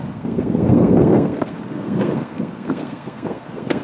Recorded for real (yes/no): no